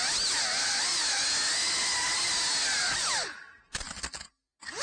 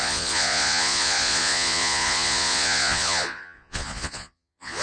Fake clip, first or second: second